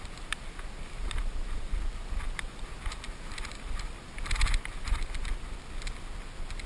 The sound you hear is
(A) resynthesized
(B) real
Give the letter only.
B